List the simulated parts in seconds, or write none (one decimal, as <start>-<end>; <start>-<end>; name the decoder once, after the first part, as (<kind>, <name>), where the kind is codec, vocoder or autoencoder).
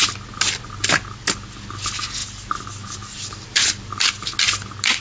2.2-4.1 (vocoder, BigVGAN v2)